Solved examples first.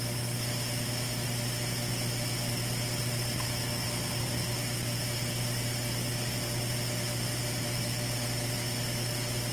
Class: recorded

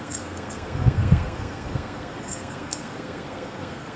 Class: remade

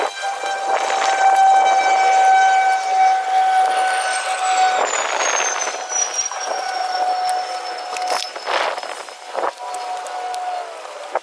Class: recorded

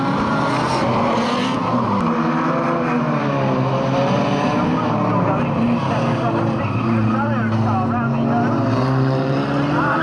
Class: recorded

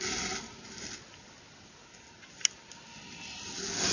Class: recorded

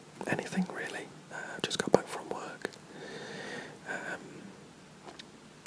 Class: recorded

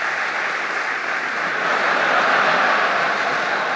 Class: remade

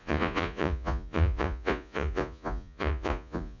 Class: remade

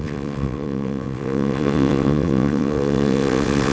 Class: remade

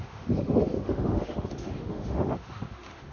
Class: remade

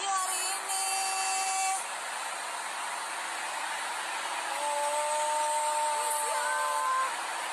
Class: recorded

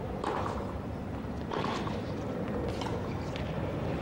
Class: remade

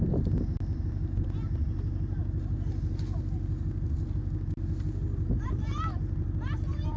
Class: recorded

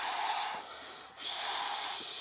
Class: recorded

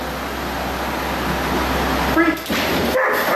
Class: recorded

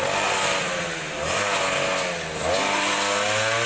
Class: recorded